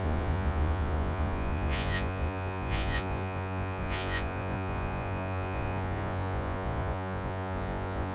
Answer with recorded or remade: remade